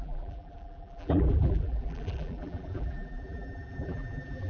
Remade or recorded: remade